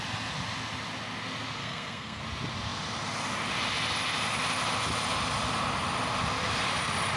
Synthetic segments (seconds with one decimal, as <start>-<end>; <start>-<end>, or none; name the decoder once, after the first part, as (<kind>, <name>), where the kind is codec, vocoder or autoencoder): 1.6-2.2 (codec, SNAC)